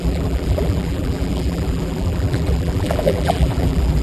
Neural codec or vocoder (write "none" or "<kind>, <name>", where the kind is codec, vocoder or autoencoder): vocoder, BigVGAN v2